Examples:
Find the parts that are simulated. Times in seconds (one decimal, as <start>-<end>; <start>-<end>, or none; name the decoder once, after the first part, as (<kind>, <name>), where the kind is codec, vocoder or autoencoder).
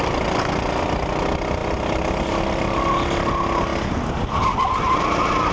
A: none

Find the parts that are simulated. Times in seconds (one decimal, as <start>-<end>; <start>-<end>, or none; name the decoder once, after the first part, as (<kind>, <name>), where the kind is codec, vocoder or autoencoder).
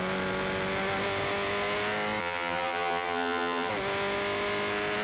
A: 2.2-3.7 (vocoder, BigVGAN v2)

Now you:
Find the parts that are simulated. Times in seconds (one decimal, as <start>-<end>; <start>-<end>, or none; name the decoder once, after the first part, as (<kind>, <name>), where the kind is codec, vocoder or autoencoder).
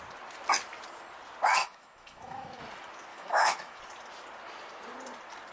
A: 1.6-2.6 (autoencoder, DAC-VAE); 3.1-3.8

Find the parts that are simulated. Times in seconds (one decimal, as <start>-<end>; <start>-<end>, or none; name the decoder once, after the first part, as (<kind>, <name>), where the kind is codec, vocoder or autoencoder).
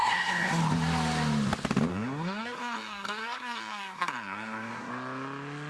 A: 0.0-0.6 (codec, SNAC); 1.9-4.9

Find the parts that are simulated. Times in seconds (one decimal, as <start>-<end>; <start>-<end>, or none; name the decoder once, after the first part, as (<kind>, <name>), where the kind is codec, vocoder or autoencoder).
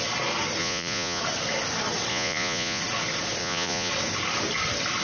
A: 0.6-1.2 (vocoder, Vocos); 2.1-2.8; 3.4-3.9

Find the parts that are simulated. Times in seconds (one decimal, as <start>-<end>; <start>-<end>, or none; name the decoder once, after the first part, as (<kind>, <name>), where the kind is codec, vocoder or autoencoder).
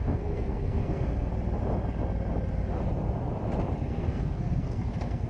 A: 0.0-1.3 (codec, SNAC); 3.9-5.3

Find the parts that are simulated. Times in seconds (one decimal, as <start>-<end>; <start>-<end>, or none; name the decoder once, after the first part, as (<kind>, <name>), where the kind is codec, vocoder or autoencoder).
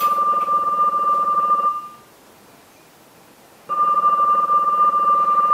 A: none